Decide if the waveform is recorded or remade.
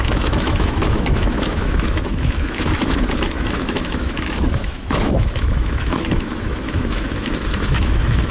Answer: remade